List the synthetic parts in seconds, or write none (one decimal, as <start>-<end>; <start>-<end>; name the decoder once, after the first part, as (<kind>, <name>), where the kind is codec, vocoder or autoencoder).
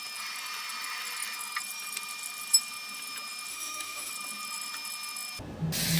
3.5-4.1 (autoencoder, DAC-VAE)